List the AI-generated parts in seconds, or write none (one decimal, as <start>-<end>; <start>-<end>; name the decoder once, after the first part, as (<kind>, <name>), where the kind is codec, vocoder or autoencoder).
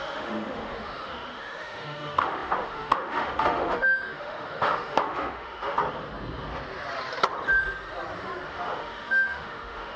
0.0-5.8 (autoencoder, DAC-VAE); 8.5-10.0